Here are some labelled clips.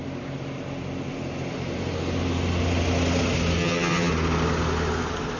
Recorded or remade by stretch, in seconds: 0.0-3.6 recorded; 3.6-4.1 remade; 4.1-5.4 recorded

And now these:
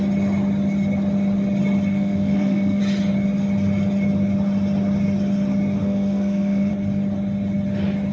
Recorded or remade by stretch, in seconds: 0.0-1.9 recorded; 1.9-2.8 remade; 2.8-5.8 recorded; 5.8-6.7 remade; 6.7-8.1 recorded

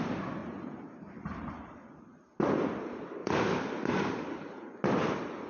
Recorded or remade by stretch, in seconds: 0.0-0.4 recorded; 0.4-2.0 remade; 2.0-3.2 recorded; 3.2-4.4 remade; 4.4-5.5 recorded

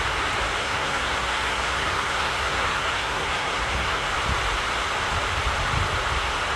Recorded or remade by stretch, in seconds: 0.0-0.6 recorded; 0.6-4.1 remade; 4.1-6.6 recorded

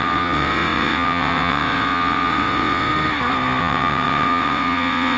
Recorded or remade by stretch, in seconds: 0.0-2.9 remade; 2.9-3.6 recorded; 3.6-5.2 remade

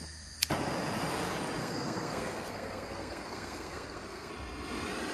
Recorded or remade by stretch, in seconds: 0.0-1.6 recorded; 1.6-4.3 remade; 4.3-5.1 recorded

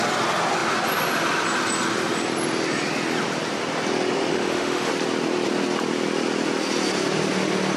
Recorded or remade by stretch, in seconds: 0.0-4.3 recorded; 4.3-4.9 remade; 4.9-7.8 recorded

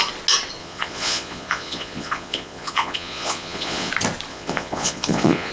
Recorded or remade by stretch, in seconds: 0.0-0.6 recorded; 0.6-3.9 remade; 3.9-4.3 recorded; 4.3-5.5 remade